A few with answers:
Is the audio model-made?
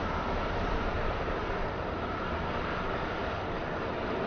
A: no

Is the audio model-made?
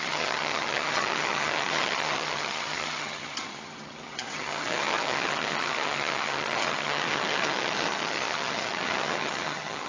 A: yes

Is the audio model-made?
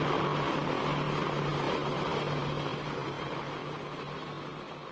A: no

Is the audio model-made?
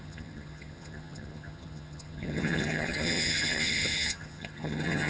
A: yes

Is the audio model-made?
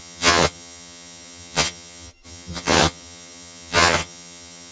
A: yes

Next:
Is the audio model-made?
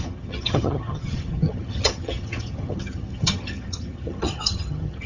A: yes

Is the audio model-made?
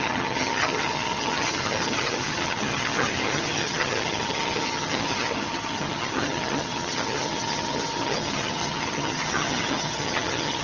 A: yes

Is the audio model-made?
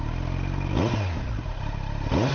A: no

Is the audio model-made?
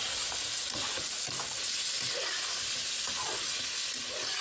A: no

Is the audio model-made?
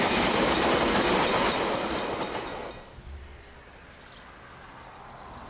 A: no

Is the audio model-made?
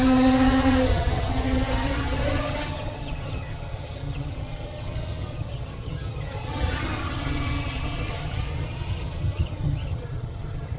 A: yes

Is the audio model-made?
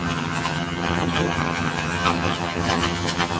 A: yes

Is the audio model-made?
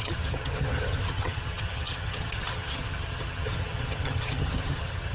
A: yes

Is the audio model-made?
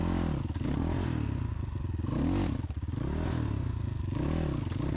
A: no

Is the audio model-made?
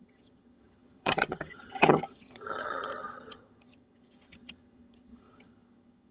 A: yes